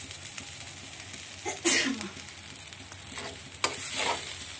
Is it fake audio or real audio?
real